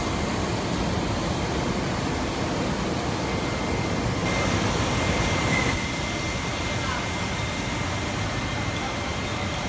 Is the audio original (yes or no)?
yes